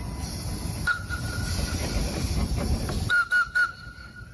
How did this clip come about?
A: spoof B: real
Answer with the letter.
A